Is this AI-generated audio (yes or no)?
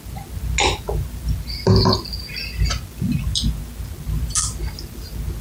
no